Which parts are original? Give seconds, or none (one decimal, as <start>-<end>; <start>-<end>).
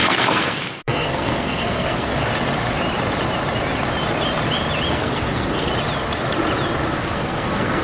2.3-4.9; 5.7-6.9